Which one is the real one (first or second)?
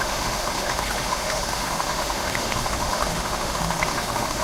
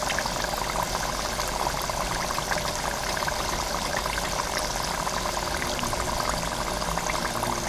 second